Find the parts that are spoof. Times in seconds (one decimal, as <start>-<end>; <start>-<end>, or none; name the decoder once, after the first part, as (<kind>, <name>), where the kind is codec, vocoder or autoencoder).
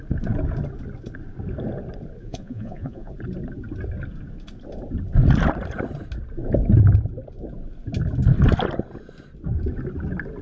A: 2.2-3.1 (vocoder, Vocos)